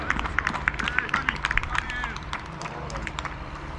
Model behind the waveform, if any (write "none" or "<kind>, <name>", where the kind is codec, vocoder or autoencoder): vocoder, BigVGAN v2